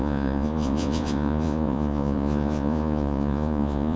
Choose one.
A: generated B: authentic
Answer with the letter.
A